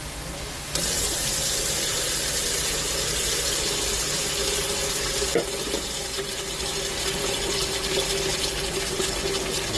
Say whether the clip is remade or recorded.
recorded